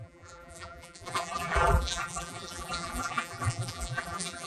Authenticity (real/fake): fake